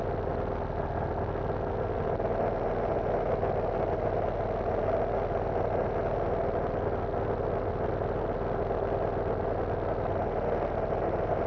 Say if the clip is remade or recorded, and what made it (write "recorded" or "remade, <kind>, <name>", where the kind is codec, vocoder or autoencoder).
recorded